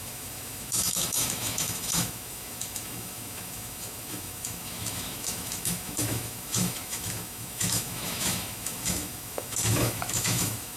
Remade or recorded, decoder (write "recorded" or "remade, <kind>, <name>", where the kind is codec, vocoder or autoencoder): remade, autoencoder, DAC-VAE